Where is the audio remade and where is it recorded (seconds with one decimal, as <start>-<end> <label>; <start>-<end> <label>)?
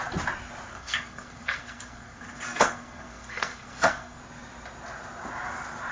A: 0.0-0.7 recorded; 0.7-4.2 remade; 4.2-5.9 recorded